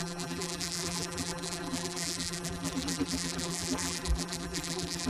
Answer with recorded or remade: remade